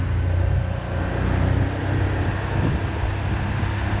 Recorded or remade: recorded